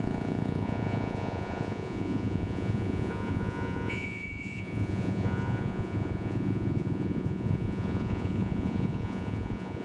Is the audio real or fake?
fake